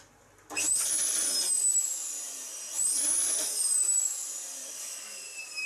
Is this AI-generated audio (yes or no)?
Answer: no